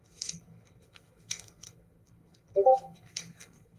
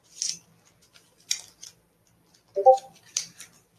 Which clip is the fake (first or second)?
first